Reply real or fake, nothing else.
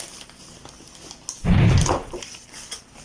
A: real